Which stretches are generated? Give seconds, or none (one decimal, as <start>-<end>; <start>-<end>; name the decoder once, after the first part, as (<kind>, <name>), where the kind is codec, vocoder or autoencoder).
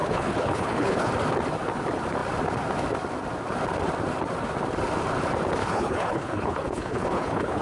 0.0-1.1 (codec, HILCodec); 5.6-7.6